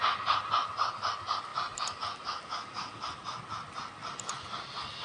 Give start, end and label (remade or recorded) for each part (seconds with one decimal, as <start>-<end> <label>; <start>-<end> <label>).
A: 0.0-1.5 recorded; 1.5-2.0 remade; 2.0-4.0 recorded; 4.0-4.6 remade; 4.6-5.0 recorded